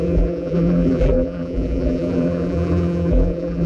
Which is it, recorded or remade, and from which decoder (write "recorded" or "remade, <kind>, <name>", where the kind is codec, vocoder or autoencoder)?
remade, vocoder, BigVGAN v2